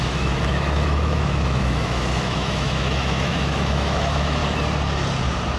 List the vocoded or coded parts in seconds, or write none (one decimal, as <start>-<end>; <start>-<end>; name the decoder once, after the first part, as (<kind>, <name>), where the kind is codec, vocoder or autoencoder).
0.0-4.4 (autoencoder, DAC-VAE)